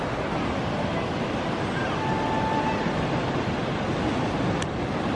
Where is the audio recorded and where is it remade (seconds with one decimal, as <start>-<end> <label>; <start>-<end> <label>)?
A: 0.0-5.1 recorded